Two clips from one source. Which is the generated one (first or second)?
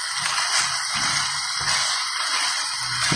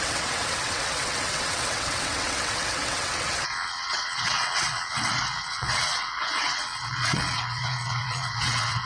second